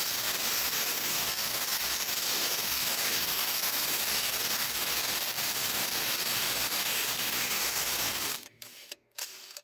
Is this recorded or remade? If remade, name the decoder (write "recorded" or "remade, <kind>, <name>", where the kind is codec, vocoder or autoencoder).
remade, codec, DAC